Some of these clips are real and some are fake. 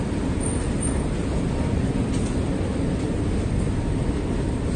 real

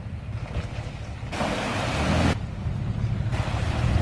real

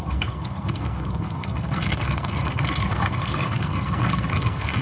fake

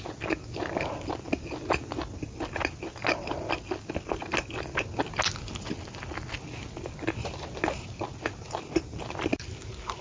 real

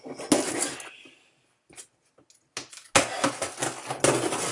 real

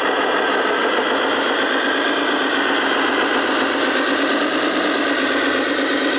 fake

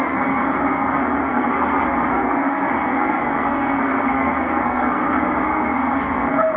fake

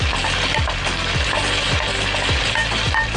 real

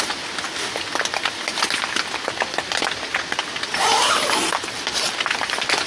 real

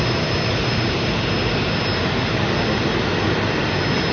real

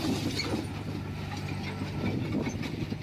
real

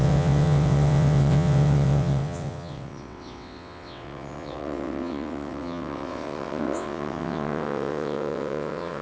fake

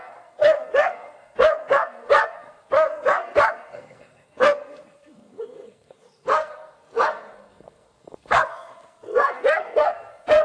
fake